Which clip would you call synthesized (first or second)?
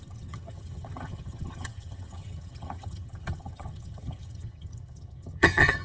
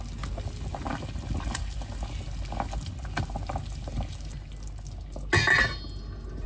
first